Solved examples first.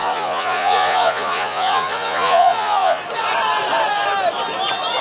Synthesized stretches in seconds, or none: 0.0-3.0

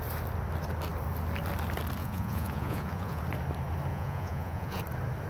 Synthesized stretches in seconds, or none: 2.0-3.2; 3.9-4.8

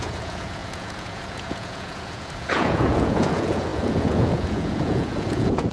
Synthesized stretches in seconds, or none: 0.0-5.7

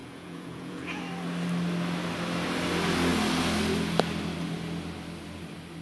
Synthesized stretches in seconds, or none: 0.0-1.0